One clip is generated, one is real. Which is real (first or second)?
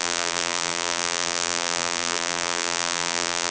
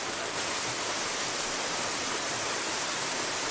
second